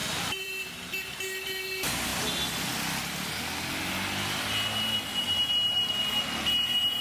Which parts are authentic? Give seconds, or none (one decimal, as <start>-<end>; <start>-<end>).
0.6-7.0